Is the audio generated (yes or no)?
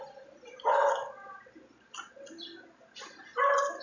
no